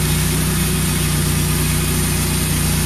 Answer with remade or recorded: recorded